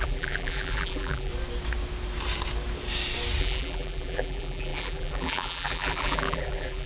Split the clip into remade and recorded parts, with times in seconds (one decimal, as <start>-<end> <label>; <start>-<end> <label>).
0.0-1.3 remade; 1.3-3.4 recorded; 3.4-6.9 remade